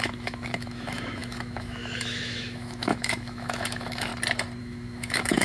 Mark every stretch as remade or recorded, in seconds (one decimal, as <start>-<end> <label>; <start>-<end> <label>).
0.0-4.1 remade; 4.1-4.6 recorded; 4.6-5.4 remade